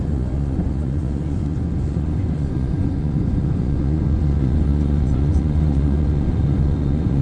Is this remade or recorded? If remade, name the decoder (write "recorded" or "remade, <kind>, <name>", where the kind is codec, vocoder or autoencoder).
remade, vocoder, Vocos